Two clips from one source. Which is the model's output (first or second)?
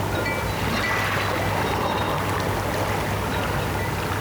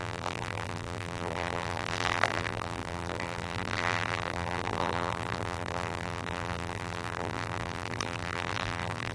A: second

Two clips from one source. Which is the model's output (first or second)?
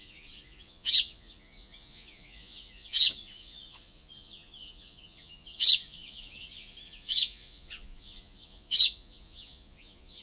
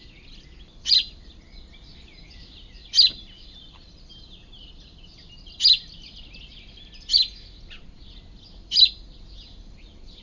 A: first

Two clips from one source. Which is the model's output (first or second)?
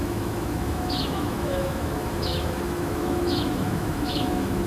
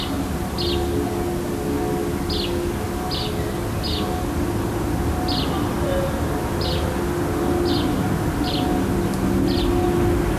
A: first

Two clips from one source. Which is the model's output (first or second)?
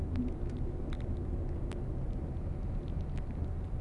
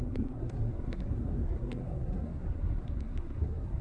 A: second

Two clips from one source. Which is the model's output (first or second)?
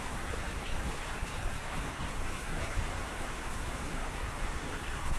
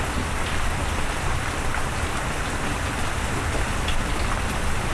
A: first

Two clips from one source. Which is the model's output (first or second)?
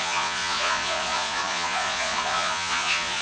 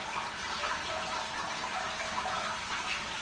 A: first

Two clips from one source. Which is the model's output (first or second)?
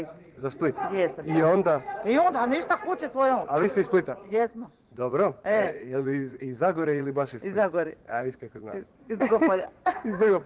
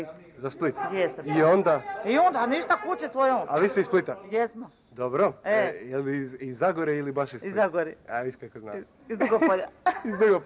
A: first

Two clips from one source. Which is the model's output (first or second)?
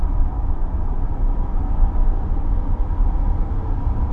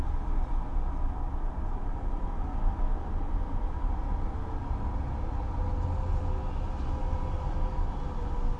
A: first